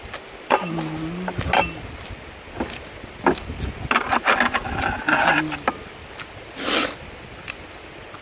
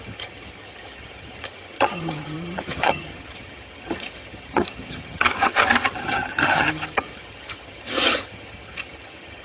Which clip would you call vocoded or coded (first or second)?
second